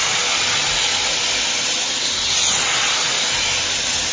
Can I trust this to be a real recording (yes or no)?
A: yes